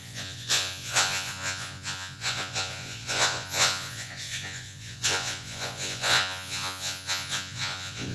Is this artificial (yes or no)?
yes